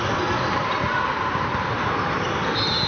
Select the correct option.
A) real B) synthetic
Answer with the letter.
A